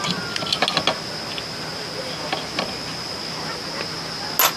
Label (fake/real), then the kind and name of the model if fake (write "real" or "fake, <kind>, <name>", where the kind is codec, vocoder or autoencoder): real